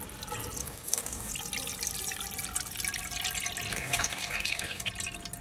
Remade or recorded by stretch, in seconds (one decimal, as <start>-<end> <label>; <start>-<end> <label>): 0.0-0.6 recorded; 0.6-1.3 remade; 1.3-3.7 recorded; 3.7-4.9 remade; 4.9-5.4 recorded